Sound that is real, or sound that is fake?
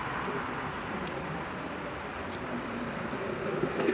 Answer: real